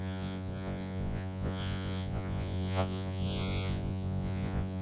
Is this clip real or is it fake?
fake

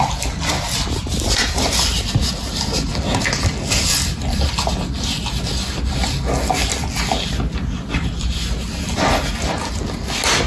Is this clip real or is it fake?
real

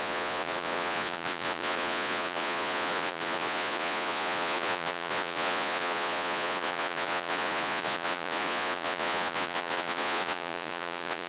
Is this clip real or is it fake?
fake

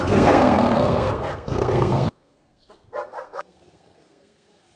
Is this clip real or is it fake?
fake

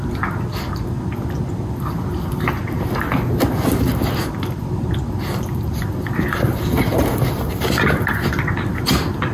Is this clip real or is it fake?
real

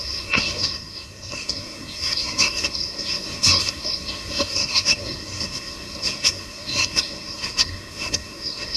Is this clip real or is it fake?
fake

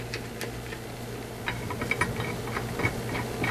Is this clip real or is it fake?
real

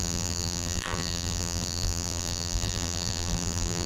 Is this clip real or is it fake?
fake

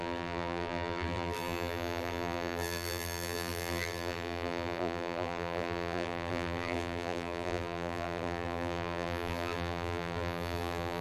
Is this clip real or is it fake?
fake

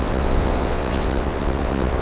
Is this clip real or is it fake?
fake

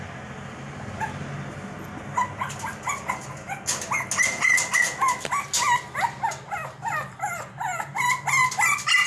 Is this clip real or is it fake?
real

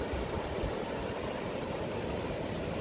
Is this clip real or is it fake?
real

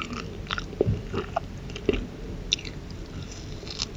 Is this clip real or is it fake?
real